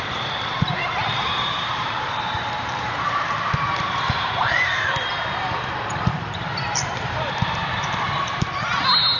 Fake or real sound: fake